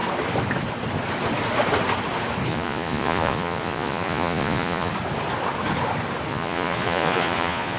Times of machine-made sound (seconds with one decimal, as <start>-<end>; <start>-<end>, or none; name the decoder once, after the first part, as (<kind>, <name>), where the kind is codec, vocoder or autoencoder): 2.5-4.9 (vocoder, Vocos); 6.3-7.8